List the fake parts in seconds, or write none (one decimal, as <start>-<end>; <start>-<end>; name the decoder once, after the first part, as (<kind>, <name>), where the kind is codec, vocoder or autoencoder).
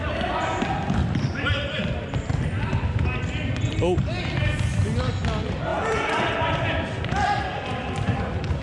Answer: 5.7-6.3 (vocoder, BigVGAN v2)